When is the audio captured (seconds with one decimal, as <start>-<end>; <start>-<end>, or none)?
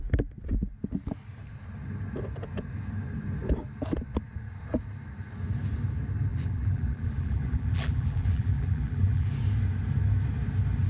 0.0-6.3; 9.3-10.9